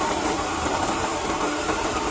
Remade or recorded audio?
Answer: remade